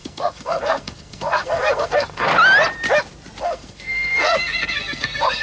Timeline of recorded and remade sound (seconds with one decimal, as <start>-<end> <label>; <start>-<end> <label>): 0.0-2.3 remade; 2.3-3.4 recorded; 3.4-5.4 remade